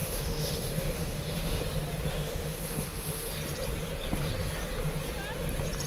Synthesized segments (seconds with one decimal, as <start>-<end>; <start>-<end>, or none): 0.0-1.6; 2.1-3.3